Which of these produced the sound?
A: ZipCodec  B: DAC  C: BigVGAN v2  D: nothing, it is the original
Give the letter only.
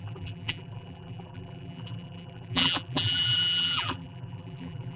C